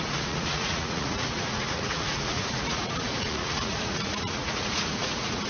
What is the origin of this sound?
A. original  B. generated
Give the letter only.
B